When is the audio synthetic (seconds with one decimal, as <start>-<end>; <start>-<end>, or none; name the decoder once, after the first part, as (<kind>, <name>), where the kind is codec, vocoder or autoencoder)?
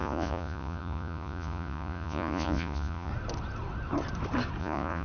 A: 0.0-3.1 (vocoder, Vocos); 4.6-5.0